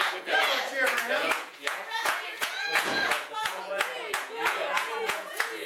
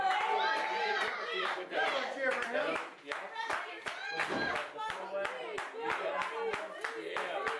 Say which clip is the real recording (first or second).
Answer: second